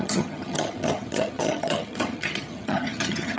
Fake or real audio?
fake